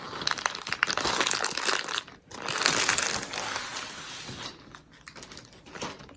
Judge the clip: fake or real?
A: real